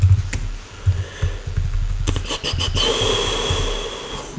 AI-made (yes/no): no